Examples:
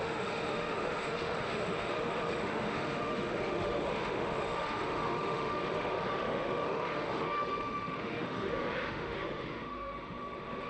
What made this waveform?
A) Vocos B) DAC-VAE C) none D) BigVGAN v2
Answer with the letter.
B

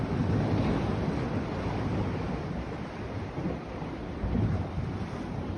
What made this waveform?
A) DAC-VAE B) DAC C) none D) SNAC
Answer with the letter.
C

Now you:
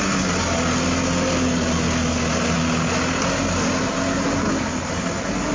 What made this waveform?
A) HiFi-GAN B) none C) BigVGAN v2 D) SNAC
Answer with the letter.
B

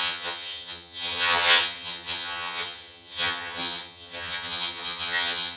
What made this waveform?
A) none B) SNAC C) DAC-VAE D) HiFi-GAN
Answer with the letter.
D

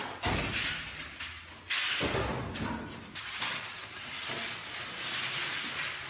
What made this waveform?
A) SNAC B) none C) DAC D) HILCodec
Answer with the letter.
B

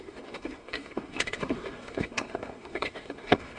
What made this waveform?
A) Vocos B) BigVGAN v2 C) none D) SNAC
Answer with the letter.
D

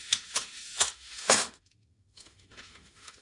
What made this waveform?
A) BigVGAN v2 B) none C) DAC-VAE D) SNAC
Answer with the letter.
C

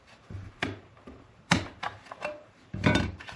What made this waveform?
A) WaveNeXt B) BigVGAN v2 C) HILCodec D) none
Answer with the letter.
B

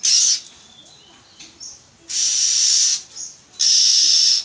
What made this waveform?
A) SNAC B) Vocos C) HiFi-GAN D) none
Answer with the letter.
D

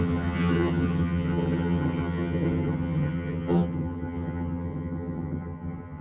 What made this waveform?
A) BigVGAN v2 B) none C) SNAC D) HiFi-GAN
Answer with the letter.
D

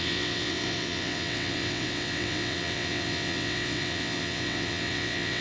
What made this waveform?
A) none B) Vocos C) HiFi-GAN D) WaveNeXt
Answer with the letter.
D